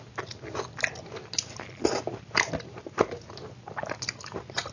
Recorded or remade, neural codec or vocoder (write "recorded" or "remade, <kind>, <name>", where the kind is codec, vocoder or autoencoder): recorded